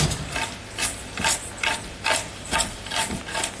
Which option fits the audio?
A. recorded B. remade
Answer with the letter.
A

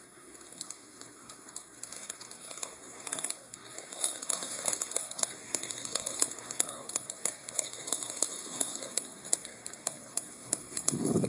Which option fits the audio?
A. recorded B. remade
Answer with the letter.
B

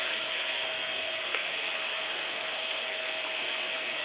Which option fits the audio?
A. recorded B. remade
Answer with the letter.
B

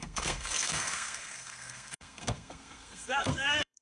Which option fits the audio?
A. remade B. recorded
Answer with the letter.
A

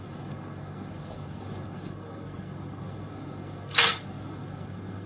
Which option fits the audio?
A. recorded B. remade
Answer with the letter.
B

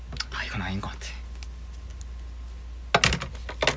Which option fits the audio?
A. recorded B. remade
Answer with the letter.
A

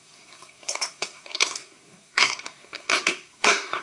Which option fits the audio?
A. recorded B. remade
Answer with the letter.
B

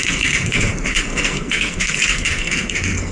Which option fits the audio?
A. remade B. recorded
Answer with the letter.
A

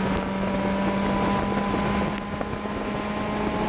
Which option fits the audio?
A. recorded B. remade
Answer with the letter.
A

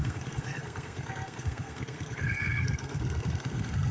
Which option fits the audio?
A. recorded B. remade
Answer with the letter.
B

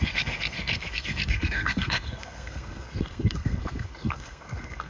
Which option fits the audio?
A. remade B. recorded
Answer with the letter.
A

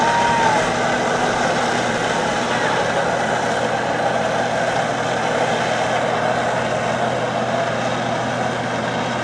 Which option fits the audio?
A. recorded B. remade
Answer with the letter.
A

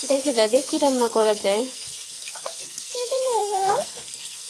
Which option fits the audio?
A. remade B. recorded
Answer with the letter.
A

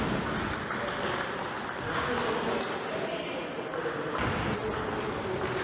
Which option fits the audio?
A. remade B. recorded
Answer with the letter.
B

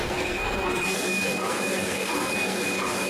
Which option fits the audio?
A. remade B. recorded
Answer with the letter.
A